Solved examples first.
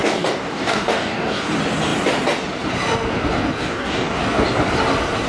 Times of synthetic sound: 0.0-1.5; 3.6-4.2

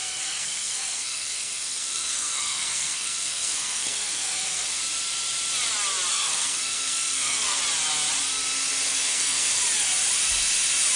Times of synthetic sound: 0.0-4.8; 6.1-7.6; 8.9-9.6